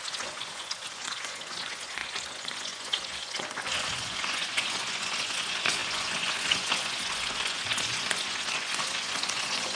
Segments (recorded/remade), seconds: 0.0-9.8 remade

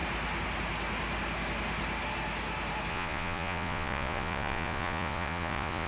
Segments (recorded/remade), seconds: 0.0-2.9 recorded; 2.9-5.9 remade